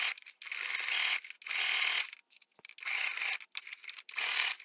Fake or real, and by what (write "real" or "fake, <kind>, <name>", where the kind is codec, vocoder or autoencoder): real